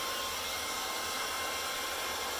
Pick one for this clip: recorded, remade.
recorded